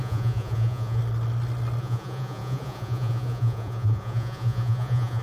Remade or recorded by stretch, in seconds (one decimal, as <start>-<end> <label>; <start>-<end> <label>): 0.0-1.0 remade; 1.0-1.8 recorded; 1.8-5.2 remade